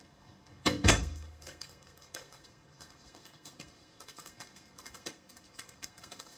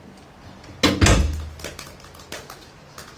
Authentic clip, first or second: second